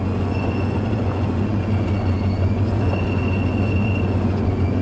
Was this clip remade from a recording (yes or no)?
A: yes